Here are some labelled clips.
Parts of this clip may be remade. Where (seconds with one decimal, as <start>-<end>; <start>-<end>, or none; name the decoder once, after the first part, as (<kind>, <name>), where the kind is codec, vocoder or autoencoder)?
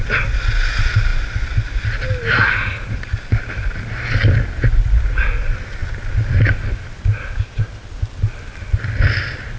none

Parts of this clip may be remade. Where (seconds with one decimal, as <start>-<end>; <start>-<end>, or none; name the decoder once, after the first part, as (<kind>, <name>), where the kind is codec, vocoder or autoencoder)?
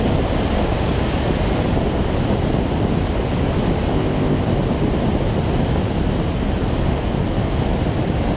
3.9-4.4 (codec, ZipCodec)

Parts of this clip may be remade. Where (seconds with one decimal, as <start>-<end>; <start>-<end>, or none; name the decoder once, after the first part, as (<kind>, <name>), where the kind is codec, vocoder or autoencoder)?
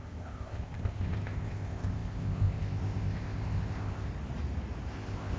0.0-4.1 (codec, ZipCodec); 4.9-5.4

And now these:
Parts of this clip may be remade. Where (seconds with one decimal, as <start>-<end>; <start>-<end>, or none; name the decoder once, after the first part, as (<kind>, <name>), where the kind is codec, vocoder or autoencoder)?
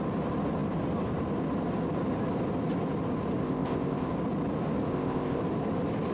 3.4-4.1 (codec, ZipCodec); 4.9-5.4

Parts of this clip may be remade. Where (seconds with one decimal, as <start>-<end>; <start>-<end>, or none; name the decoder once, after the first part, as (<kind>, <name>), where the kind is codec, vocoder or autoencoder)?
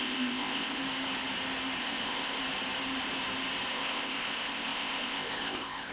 0.0-0.8 (codec, ZipCodec); 1.8-2.4; 3.7-5.9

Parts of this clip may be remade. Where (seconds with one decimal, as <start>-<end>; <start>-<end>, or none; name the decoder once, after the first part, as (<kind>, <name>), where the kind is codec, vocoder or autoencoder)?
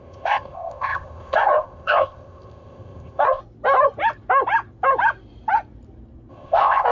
0.0-3.4 (codec, ZipCodec); 6.3-6.9